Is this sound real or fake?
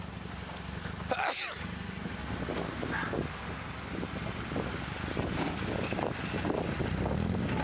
real